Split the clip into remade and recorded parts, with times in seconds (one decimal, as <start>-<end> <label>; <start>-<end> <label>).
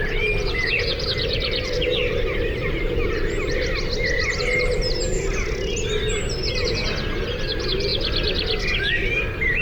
0.0-9.6 recorded